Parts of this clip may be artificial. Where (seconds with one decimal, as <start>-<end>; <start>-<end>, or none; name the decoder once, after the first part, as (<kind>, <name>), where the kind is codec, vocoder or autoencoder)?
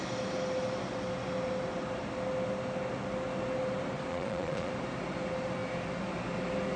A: 4.1-4.7 (vocoder, Vocos)